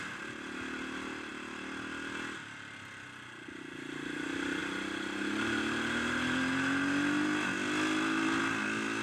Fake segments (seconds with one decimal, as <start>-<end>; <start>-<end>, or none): none